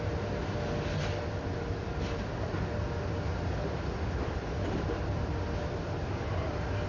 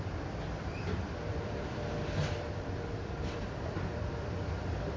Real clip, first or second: first